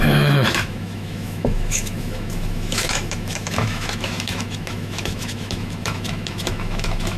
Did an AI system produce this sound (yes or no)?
yes